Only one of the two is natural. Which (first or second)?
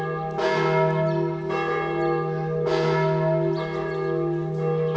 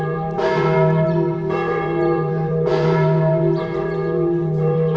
first